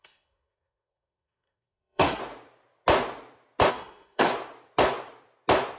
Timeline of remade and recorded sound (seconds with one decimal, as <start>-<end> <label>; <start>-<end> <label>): 0.0-2.2 remade; 2.2-3.7 recorded; 3.7-4.3 remade; 4.3-5.8 recorded